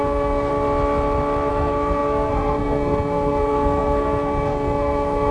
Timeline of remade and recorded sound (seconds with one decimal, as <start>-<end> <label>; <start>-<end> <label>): 0.0-0.5 remade; 0.5-1.5 recorded; 1.5-5.3 remade